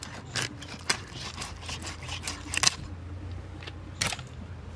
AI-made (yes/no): no